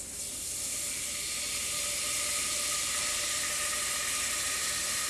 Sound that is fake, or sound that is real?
real